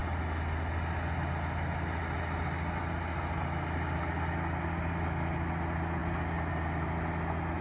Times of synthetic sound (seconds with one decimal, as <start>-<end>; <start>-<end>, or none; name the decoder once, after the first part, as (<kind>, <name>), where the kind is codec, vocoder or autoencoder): none